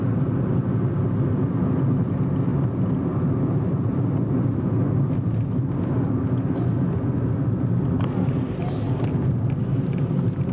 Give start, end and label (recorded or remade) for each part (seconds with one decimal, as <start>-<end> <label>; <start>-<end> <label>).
0.0-10.5 recorded